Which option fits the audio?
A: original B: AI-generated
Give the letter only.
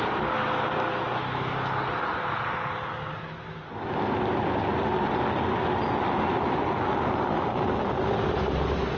A